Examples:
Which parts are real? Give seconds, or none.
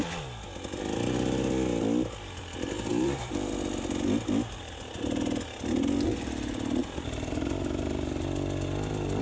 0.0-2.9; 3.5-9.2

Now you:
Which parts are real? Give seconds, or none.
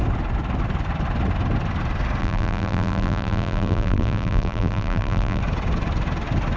0.0-2.2; 5.4-6.6